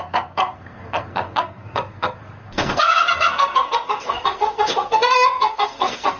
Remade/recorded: remade